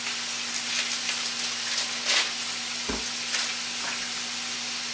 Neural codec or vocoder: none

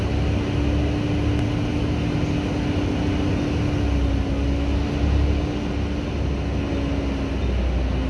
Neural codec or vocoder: none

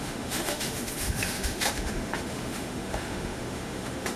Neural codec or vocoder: autoencoder, DAC-VAE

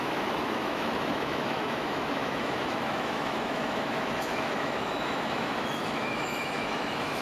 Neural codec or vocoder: autoencoder, DAC-VAE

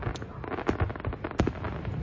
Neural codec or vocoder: none